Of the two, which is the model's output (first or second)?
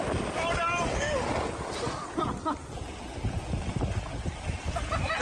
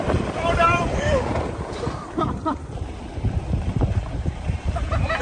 second